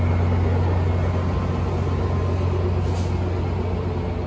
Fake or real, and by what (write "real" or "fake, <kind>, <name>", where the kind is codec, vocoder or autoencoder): real